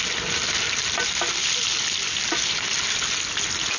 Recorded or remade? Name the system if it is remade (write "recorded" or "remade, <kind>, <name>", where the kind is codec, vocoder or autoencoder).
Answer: recorded